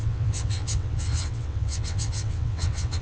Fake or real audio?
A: fake